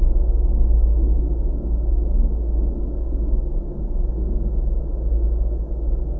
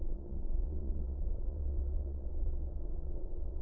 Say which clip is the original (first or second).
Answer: first